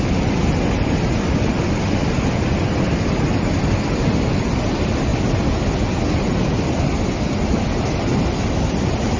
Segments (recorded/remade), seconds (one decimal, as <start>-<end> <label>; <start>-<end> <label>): 0.0-9.2 recorded